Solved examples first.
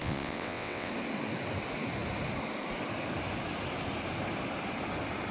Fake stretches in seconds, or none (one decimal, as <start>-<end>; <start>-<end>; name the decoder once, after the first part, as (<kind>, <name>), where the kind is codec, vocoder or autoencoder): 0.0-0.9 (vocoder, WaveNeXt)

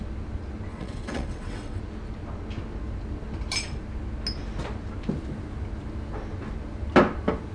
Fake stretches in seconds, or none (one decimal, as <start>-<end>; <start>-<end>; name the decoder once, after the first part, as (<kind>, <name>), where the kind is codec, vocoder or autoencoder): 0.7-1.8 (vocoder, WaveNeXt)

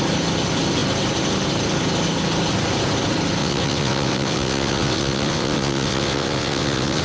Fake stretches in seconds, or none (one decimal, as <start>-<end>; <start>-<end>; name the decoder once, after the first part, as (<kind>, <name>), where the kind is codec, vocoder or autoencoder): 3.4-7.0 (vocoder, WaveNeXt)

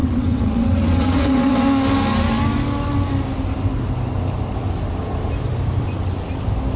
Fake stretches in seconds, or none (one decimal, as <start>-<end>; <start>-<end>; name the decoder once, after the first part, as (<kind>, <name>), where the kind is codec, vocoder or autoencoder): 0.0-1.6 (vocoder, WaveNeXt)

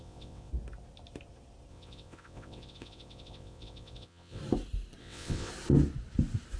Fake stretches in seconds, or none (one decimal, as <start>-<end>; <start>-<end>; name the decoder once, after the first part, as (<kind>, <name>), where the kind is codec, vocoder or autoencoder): 0.0-0.5 (vocoder, WaveNeXt); 1.7-4.4; 5.0-5.5